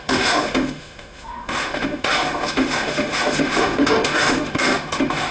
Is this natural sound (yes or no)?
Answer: no